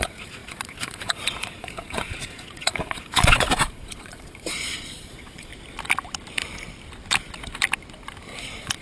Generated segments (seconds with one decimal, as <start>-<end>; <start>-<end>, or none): 0.0-5.5; 8.4-8.8